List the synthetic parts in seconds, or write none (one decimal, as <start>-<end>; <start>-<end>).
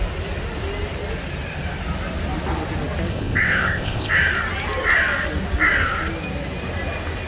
3.1-4.1